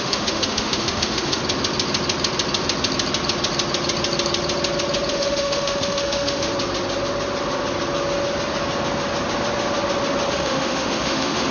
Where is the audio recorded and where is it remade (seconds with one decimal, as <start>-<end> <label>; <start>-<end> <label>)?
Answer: 0.0-1.4 remade; 1.4-5.1 recorded; 5.1-6.5 remade; 6.5-10.3 recorded; 10.3-11.5 remade